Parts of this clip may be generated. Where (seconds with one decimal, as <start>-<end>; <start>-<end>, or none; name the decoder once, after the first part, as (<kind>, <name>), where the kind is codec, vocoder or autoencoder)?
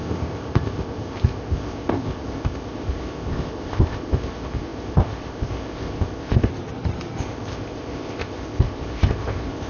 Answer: 0.0-6.5 (codec, ZipCodec); 7.2-9.7